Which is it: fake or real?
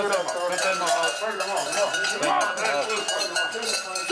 real